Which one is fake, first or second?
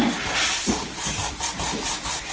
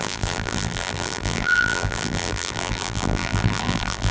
second